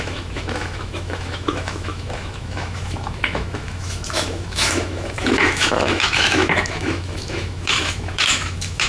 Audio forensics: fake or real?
fake